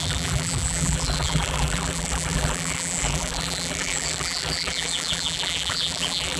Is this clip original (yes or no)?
no